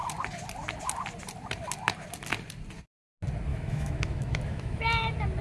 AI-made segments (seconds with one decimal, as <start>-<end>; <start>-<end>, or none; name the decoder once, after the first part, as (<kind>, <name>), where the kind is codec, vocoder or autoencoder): 3.5-4.8 (autoencoder, DAC-VAE)